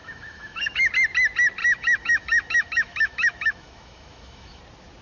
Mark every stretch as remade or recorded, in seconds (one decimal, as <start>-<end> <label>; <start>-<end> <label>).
0.0-0.9 remade; 0.9-1.6 recorded; 1.6-4.6 remade; 4.6-5.0 recorded